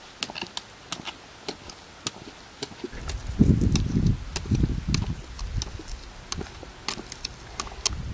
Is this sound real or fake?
real